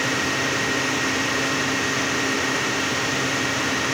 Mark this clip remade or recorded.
recorded